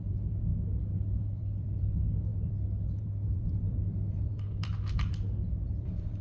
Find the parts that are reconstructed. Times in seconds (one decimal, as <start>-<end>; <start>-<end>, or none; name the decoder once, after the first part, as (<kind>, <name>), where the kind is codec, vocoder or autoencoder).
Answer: 0.0-0.5 (vocoder, BigVGAN v2); 1.2-4.7; 5.5-6.2